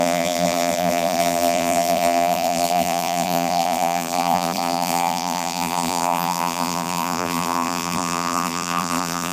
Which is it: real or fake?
fake